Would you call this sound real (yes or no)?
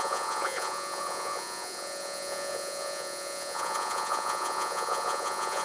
no